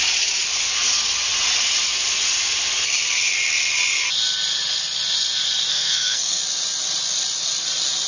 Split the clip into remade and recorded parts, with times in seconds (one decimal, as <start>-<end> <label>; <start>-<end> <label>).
0.0-5.7 recorded; 5.7-6.4 remade; 6.4-8.1 recorded